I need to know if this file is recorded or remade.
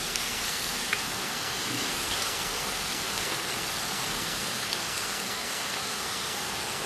remade